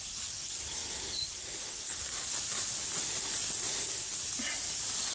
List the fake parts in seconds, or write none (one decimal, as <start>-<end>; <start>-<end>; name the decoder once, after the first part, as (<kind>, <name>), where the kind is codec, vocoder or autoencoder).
none